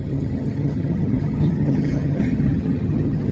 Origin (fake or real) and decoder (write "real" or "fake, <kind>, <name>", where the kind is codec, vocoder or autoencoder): fake, vocoder, HiFi-GAN